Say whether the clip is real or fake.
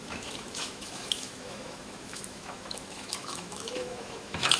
fake